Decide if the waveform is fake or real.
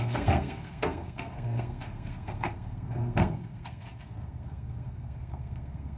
fake